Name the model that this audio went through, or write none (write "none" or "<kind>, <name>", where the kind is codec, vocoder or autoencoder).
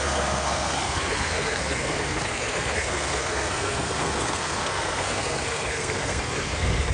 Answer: codec, SNAC